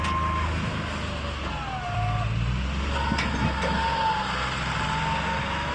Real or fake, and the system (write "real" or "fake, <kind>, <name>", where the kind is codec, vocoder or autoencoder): real